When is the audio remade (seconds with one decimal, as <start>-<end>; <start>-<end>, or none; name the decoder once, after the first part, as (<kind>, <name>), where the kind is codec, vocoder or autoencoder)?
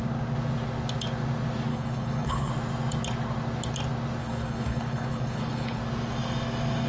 1.7-2.5 (codec, HILCodec); 4.2-5.8